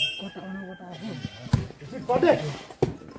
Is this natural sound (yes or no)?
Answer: yes